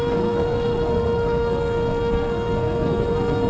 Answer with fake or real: fake